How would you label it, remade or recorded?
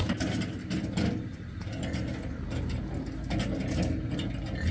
recorded